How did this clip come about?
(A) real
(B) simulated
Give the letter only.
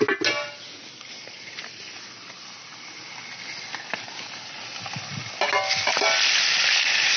A